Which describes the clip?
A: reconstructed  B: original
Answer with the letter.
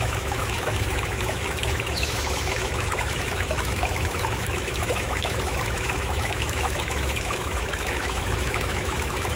A